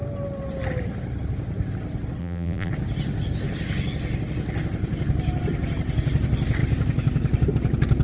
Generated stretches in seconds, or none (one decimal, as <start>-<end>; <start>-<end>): 2.2-2.7